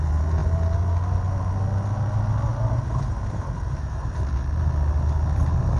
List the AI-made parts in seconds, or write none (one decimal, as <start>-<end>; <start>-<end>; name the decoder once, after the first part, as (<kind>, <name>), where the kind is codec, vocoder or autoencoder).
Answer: 2.5-4.3 (vocoder, BigVGAN v2)